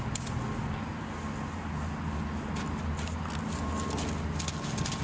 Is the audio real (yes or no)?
yes